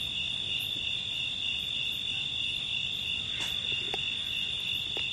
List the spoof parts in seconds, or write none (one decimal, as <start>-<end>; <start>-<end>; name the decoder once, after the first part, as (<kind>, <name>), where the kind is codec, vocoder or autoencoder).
none